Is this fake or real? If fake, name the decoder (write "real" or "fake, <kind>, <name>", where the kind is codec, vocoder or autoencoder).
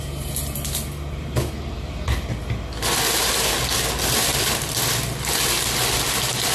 real